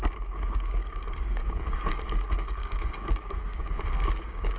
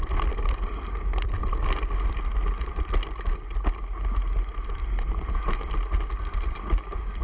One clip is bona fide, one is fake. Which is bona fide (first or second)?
second